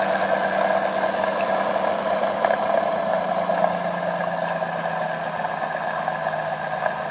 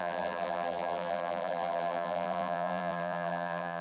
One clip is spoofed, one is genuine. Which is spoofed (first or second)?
second